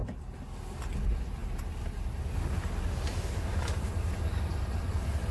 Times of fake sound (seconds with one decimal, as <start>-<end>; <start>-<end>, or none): 0.8-5.3